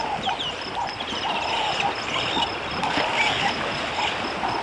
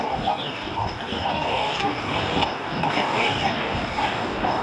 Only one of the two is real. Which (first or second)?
first